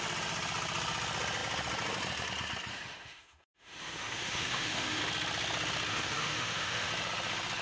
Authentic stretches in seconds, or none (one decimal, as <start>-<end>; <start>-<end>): 0.0-2.7; 5.0-5.9; 6.9-7.6